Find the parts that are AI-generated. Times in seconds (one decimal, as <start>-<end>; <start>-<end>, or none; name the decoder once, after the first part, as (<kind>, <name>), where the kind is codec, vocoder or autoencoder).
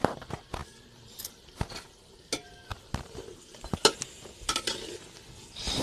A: none